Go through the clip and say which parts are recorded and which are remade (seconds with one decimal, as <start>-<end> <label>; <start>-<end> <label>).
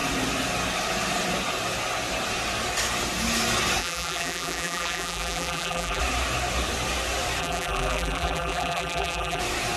0.0-3.8 recorded; 3.8-6.0 remade; 6.0-7.4 recorded; 7.4-9.4 remade; 9.4-9.8 recorded